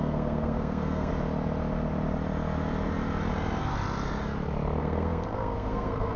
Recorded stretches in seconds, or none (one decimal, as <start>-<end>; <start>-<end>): 1.1-4.8